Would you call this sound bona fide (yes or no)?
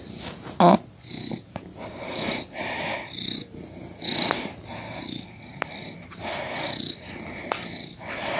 yes